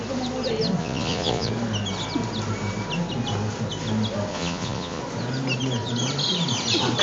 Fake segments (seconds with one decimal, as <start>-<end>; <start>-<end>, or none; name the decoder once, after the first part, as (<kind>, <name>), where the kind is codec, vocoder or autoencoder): 0.8-1.5 (vocoder, Vocos); 4.3-5.0